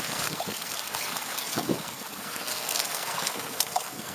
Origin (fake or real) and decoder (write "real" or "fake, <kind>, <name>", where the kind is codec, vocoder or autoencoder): fake, codec, SNAC